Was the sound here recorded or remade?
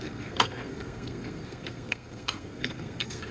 remade